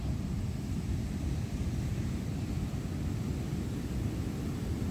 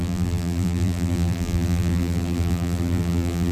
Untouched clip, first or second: first